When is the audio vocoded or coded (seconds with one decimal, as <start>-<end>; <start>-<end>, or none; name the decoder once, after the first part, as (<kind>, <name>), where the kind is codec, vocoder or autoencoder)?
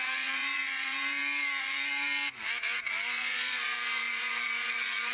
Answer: 0.0-5.1 (vocoder, Vocos)